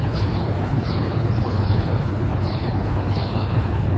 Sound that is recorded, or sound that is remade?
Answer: remade